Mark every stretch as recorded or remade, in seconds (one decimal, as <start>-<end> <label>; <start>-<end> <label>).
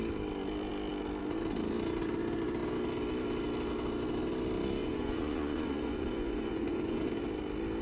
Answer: 0.0-4.8 recorded; 4.8-7.1 remade; 7.1-7.8 recorded